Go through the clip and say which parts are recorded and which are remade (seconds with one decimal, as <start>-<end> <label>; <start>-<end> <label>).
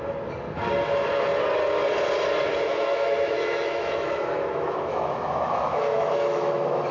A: 0.0-2.5 recorded; 2.5-6.9 remade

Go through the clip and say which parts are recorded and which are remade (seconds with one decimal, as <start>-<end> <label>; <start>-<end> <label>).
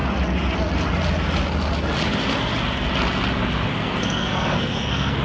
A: 0.0-3.7 recorded; 3.7-5.2 remade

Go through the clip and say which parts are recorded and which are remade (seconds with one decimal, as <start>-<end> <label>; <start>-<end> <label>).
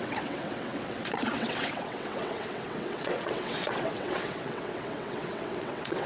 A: 0.0-6.1 remade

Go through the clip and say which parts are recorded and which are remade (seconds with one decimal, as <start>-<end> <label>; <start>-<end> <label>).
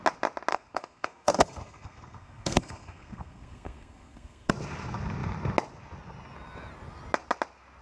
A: 0.0-0.5 recorded; 0.5-4.5 remade; 4.5-7.8 recorded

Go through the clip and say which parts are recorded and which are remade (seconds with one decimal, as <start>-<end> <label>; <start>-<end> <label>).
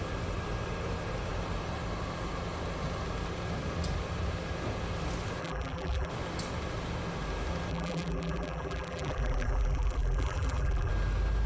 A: 0.0-5.4 recorded; 5.4-6.1 remade; 6.1-7.7 recorded; 7.7-10.9 remade; 10.9-11.5 recorded